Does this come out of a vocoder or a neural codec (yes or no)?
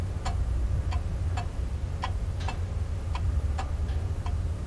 no